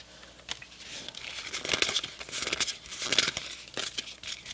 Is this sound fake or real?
real